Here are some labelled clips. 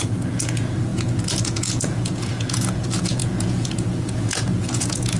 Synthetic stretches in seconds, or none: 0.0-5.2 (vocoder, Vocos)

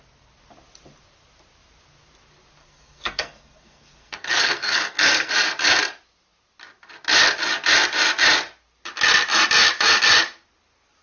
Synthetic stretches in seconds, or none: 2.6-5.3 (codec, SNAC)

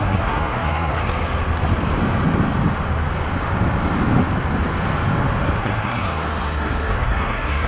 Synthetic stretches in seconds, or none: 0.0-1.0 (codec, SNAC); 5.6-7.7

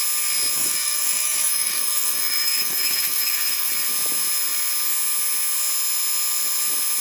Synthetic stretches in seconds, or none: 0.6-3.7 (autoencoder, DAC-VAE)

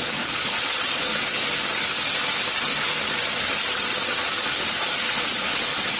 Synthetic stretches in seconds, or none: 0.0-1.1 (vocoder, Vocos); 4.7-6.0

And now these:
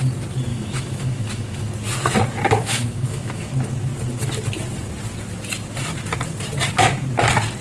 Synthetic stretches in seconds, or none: 0.5-1.7 (autoencoder, DAC-VAE); 2.6-3.5

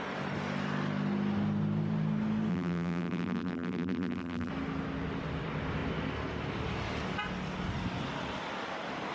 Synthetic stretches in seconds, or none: 2.5-4.5 (vocoder, BigVGAN v2)

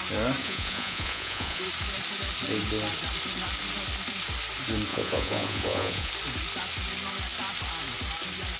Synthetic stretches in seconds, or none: 0.4-1.6 (vocoder, Vocos); 4.9-6.1